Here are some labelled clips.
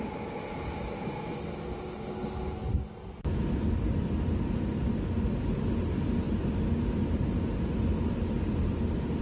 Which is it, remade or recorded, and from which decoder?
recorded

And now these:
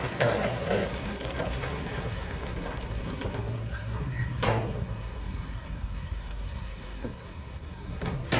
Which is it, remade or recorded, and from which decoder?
remade, codec, SNAC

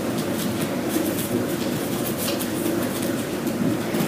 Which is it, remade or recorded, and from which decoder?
recorded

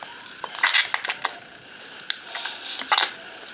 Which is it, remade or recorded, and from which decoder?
recorded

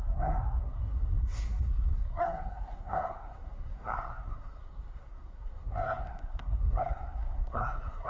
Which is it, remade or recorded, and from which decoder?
remade, codec, SNAC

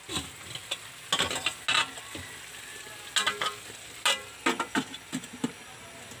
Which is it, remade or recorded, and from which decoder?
recorded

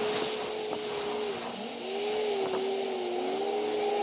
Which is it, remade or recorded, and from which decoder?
recorded